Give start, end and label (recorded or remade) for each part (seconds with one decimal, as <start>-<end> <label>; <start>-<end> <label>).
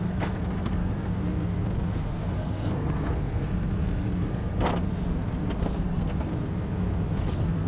0.0-1.1 remade; 1.1-2.1 recorded; 2.1-4.7 remade; 4.7-5.6 recorded; 5.6-6.3 remade; 6.3-7.2 recorded; 7.2-7.7 remade